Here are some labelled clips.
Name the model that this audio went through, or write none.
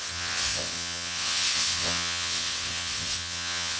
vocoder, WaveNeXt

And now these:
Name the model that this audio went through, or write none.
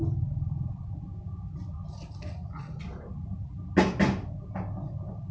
none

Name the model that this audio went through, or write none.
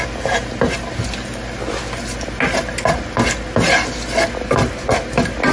none